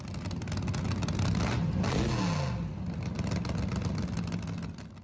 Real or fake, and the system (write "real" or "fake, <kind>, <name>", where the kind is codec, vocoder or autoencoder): real